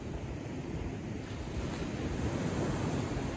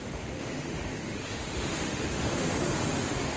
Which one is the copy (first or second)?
second